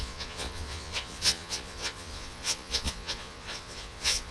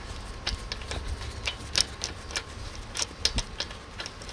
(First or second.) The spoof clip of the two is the first